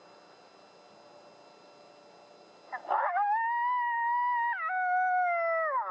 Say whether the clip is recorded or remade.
recorded